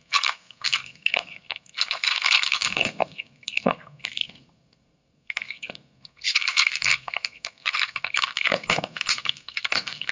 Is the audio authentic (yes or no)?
no